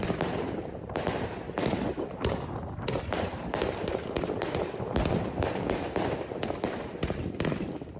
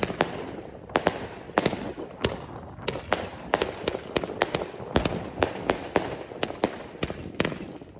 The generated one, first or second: first